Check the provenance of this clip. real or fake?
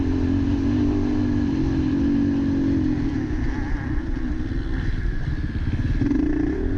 real